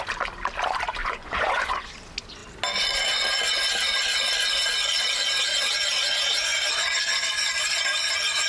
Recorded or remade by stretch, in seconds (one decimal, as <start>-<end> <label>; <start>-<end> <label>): 0.0-1.0 recorded; 1.0-1.9 remade; 1.9-8.5 recorded